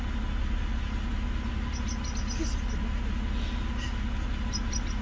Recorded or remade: recorded